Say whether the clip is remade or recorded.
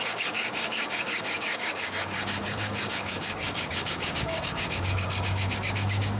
remade